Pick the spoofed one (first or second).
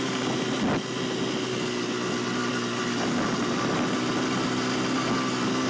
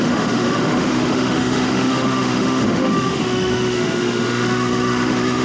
second